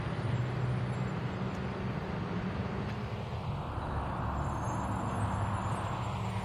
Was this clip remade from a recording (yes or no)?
no